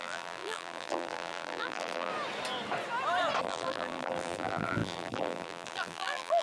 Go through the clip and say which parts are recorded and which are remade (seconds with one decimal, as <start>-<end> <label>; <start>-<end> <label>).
0.0-2.1 remade; 2.1-3.4 recorded; 3.4-6.4 remade